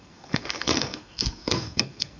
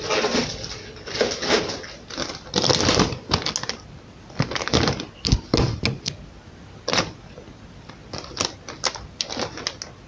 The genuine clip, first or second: second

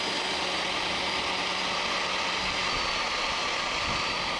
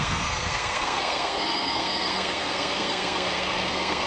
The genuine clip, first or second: first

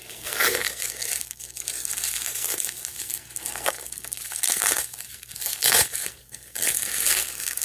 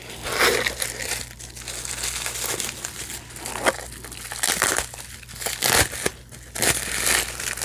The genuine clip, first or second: second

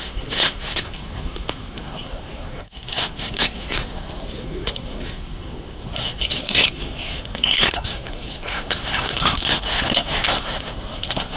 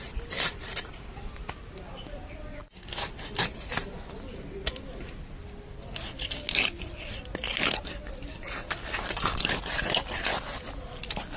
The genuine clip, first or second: second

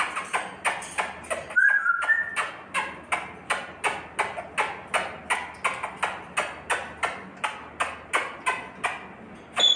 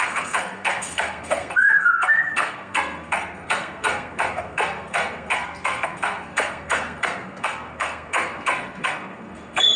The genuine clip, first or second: first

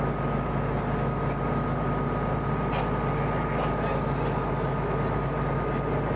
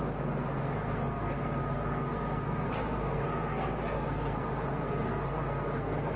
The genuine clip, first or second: first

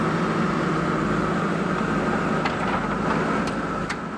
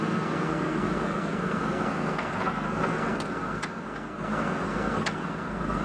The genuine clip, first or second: first